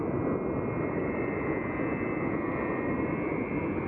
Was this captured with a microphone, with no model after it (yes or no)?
yes